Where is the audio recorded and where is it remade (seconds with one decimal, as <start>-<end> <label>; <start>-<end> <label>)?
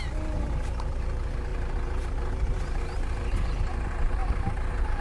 0.0-1.5 recorded; 1.5-3.8 remade; 3.8-4.2 recorded; 4.2-5.0 remade